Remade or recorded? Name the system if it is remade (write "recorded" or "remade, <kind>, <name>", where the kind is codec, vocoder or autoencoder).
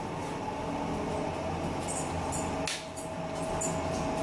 recorded